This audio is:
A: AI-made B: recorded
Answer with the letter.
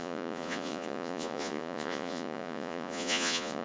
A